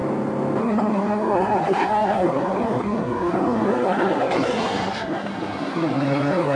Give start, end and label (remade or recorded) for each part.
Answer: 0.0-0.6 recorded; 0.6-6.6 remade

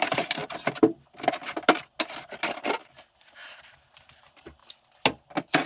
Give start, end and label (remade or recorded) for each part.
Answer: 0.0-0.4 remade; 0.4-3.2 recorded; 3.2-4.6 remade; 4.6-5.7 recorded

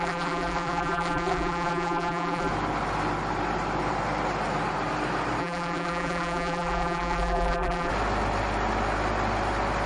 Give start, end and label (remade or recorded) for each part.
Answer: 0.0-2.5 remade; 2.5-5.4 recorded; 5.4-7.9 remade; 7.9-9.9 recorded

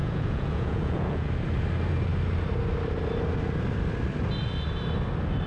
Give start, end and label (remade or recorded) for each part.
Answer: 0.0-1.3 remade; 1.3-5.5 recorded

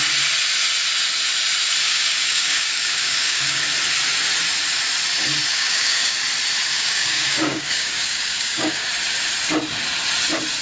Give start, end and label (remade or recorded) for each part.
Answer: 0.0-1.8 recorded; 1.8-3.6 remade; 3.6-5.5 recorded; 5.5-6.2 remade; 6.2-6.7 recorded; 6.7-8.9 remade; 8.9-10.6 recorded

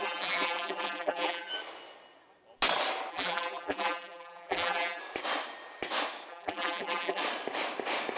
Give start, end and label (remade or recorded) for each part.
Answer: 0.0-1.5 remade; 1.5-3.1 recorded; 3.1-5.0 remade; 5.0-6.3 recorded; 6.3-7.2 remade; 7.2-8.2 recorded

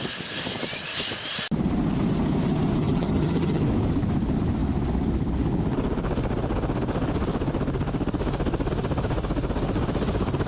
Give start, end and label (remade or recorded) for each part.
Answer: 0.0-2.8 recorded; 2.8-3.6 remade; 3.6-10.5 recorded